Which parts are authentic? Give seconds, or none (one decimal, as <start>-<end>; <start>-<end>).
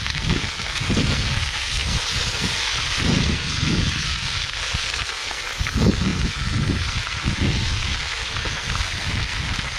none